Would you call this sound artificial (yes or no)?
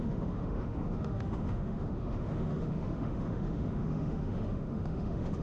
yes